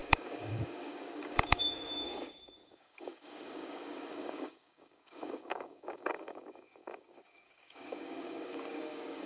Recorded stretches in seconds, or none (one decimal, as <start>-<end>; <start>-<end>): none